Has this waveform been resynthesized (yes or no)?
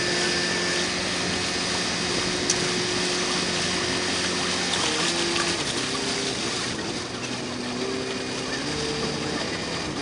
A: no